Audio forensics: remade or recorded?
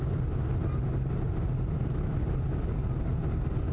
recorded